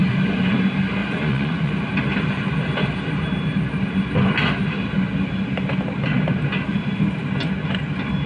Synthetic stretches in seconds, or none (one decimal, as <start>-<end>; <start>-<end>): 1.0-1.7